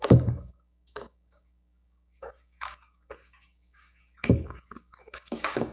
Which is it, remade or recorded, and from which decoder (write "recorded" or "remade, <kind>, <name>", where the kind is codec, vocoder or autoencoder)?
remade, codec, DAC